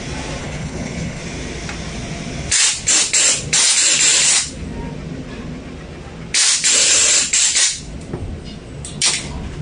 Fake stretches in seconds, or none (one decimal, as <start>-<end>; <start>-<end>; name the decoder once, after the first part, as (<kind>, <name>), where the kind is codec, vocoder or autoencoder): 0.4-1.2 (codec, HILCodec)